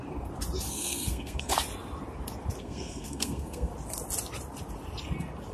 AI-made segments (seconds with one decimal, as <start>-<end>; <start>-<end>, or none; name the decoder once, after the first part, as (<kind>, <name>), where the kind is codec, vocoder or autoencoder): 0.7-1.5 (codec, SNAC); 2.6-3.7